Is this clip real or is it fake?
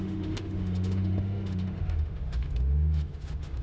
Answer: fake